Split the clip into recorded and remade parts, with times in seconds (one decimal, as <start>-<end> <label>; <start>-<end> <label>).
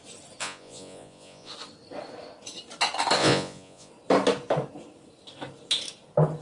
0.0-0.4 recorded; 0.4-1.5 remade; 1.5-3.2 recorded; 3.2-3.9 remade; 3.9-6.4 recorded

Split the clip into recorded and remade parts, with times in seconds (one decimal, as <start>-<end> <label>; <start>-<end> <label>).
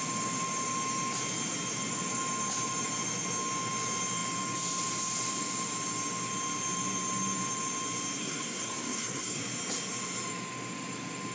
0.0-8.2 recorded; 8.2-9.4 remade; 9.4-11.3 recorded